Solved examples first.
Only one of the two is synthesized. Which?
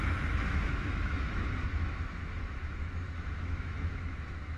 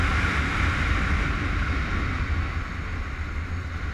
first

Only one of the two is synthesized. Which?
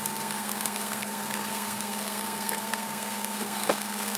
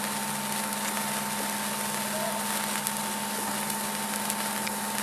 first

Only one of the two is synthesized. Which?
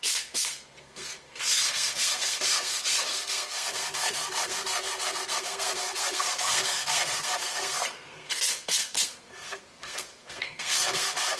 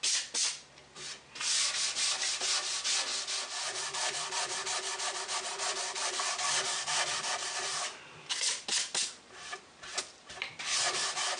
first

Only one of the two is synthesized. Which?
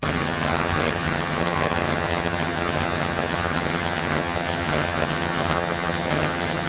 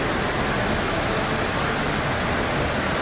first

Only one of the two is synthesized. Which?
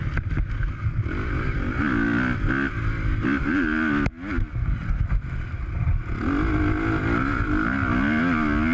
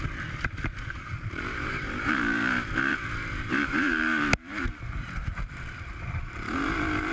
second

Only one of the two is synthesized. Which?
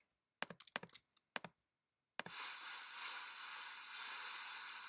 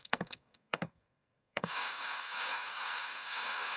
second